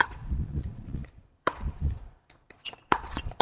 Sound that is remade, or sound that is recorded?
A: remade